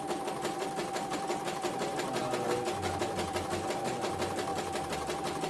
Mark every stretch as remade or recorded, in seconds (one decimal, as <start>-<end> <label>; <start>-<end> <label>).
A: 0.0-5.5 recorded